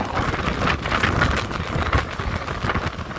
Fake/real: real